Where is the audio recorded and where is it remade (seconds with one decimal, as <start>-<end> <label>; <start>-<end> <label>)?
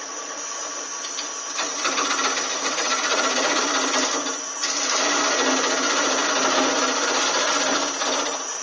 0.0-2.5 recorded; 2.5-3.6 remade; 3.6-8.6 recorded